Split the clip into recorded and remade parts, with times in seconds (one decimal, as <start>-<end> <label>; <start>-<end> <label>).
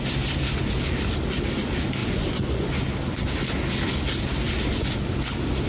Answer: 0.0-2.0 recorded; 2.0-2.7 remade; 2.7-5.7 recorded